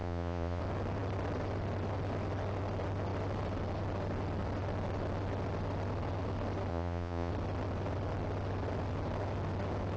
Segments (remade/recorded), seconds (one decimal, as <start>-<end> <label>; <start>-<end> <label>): 0.0-0.6 remade; 0.6-6.7 recorded; 6.7-7.3 remade; 7.3-10.0 recorded